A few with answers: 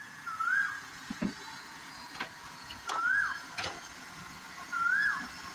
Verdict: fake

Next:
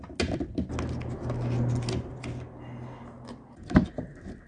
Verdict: real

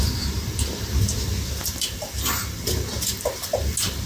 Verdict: real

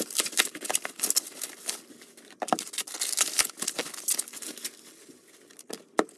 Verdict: real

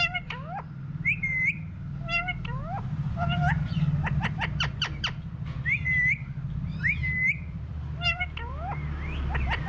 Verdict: fake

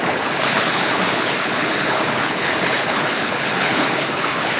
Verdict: fake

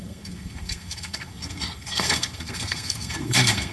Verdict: fake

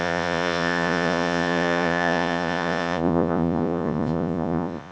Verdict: fake